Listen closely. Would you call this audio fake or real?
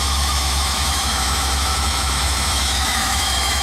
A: fake